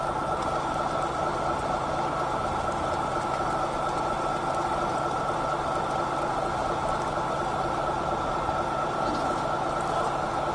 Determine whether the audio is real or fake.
real